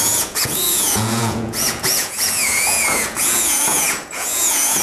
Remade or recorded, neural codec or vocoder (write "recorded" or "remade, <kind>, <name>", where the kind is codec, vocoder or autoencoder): remade, vocoder, Vocos